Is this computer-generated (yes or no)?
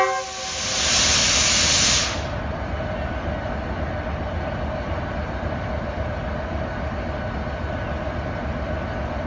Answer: no